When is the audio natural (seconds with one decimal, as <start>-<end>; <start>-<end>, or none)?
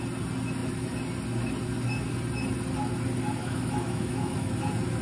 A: 0.0-3.4; 4.5-5.0